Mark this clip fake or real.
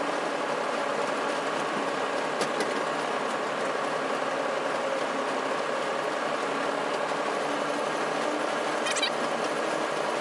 real